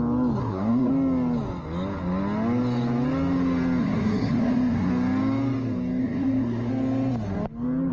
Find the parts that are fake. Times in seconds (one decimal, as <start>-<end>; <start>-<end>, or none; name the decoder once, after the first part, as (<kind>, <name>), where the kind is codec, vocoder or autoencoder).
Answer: 0.4-0.9 (codec, SNAC); 3.8-4.9; 6.0-6.7